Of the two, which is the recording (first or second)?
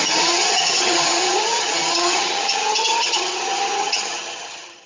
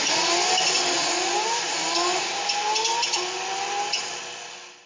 second